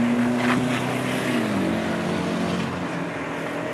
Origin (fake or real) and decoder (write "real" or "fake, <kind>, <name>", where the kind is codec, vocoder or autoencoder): real